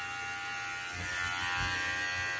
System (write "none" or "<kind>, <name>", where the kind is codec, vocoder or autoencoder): none